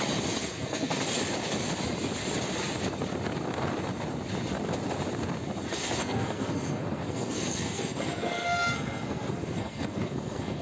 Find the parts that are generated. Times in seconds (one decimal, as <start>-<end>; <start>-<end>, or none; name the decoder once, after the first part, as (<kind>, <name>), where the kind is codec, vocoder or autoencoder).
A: 0.4-1.0 (codec, SNAC); 6.0-10.6